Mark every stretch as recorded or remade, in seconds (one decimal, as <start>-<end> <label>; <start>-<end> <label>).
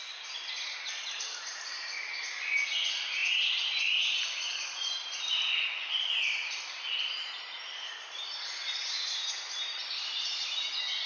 0.0-11.1 recorded